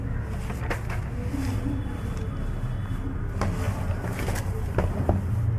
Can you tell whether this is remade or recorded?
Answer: recorded